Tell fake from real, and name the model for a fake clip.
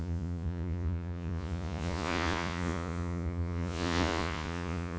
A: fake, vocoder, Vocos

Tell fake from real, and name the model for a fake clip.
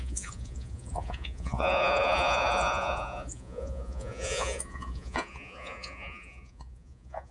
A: fake, vocoder, Vocos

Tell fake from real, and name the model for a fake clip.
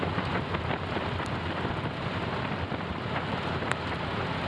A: fake, vocoder, BigVGAN v2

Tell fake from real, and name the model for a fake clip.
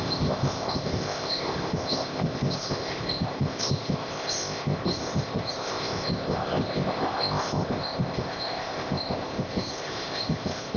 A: fake, codec, ZipCodec